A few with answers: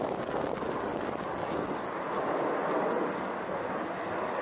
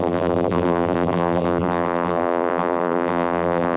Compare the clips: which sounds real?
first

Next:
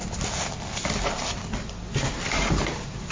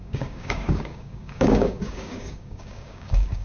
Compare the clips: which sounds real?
first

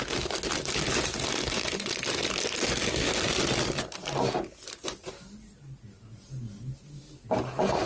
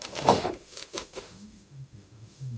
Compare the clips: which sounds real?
first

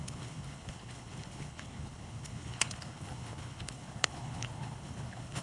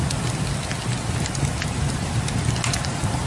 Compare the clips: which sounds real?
second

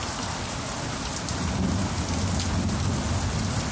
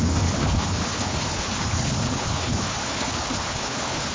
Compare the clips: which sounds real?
first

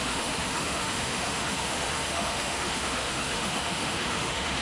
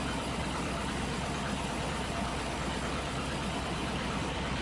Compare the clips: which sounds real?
second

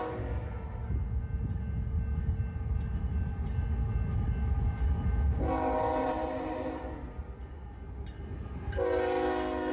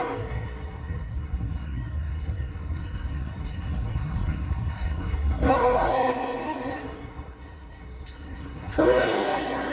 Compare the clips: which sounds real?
first